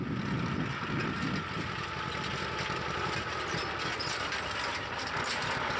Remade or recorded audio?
recorded